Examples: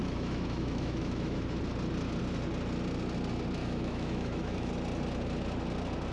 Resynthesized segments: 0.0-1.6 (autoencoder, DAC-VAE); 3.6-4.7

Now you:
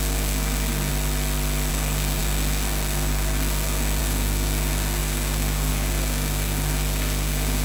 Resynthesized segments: 0.0-0.9 (codec, SNAC); 1.7-7.6

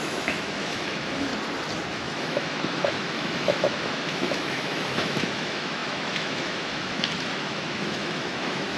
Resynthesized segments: 0.0-1.3 (autoencoder, DAC-VAE); 1.9-8.8

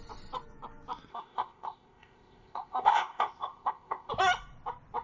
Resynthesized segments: 1.1-4.1 (codec, ZipCodec)

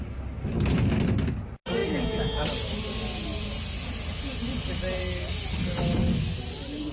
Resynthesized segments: none